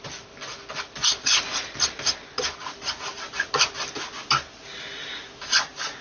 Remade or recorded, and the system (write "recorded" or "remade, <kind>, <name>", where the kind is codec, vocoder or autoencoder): recorded